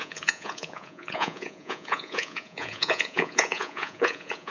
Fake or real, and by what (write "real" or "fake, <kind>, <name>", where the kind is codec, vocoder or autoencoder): fake, vocoder, Vocos